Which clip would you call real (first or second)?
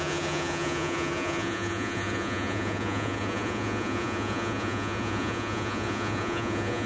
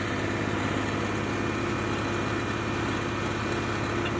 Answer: second